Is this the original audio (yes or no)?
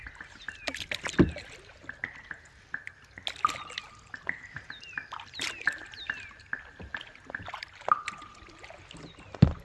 yes